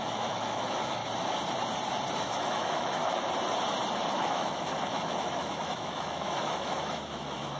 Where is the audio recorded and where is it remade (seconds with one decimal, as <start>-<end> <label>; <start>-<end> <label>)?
0.0-1.0 remade; 1.0-2.1 recorded; 2.1-3.0 remade; 3.0-4.1 recorded; 4.1-7.6 remade